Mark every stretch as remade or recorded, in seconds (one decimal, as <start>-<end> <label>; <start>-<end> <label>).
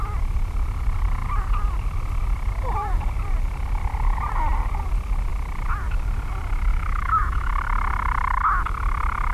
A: 0.0-6.7 recorded; 6.7-7.5 remade; 7.5-9.3 recorded